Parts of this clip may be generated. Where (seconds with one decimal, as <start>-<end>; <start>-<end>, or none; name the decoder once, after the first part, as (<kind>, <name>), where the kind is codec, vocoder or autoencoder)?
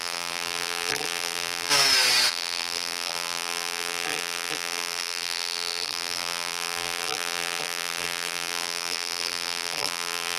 0.0-1.7 (vocoder, BigVGAN v2); 2.3-10.4